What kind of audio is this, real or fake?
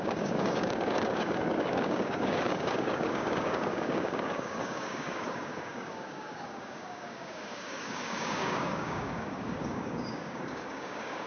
fake